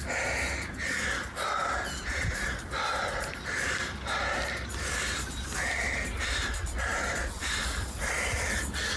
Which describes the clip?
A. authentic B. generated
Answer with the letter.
A